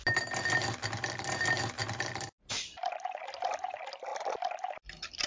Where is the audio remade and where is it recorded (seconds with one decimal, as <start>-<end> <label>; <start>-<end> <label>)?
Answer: 0.0-5.3 recorded